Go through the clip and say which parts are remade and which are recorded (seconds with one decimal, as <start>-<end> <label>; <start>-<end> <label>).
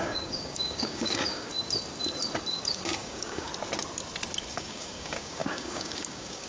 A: 0.0-1.5 remade; 1.5-2.5 recorded; 2.5-3.5 remade; 3.5-4.5 recorded; 4.5-6.5 remade